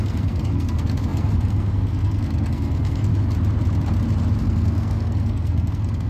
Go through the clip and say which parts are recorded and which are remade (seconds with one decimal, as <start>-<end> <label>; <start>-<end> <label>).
0.0-3.1 remade; 3.1-4.4 recorded; 4.4-6.1 remade